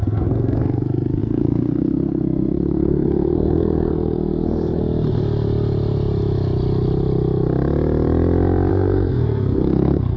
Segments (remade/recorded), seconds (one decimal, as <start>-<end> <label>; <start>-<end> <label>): 0.0-4.8 remade; 4.8-8.7 recorded; 8.7-10.2 remade

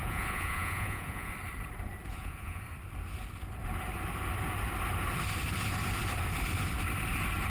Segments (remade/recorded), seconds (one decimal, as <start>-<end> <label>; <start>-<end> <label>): 0.0-1.3 remade; 1.3-2.1 recorded; 2.1-2.6 remade; 2.6-7.5 recorded

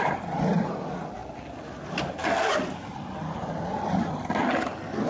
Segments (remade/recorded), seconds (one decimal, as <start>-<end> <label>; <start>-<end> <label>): 0.0-5.1 recorded

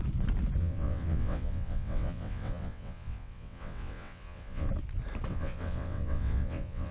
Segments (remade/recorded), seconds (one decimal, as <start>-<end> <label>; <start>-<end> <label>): 0.0-0.6 recorded; 0.6-4.7 remade; 4.7-5.3 recorded; 5.3-6.9 remade

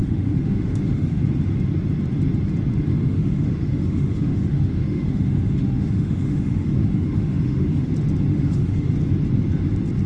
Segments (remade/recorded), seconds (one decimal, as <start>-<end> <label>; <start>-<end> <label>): 0.0-1.2 remade; 1.2-2.9 recorded; 2.9-7.9 remade; 7.9-8.3 recorded; 8.3-8.9 remade; 8.9-10.1 recorded

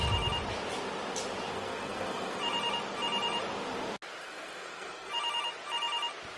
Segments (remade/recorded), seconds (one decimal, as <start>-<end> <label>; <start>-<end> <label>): 0.0-1.5 recorded; 1.5-2.4 remade; 2.4-4.2 recorded; 4.2-5.1 remade; 5.1-6.4 recorded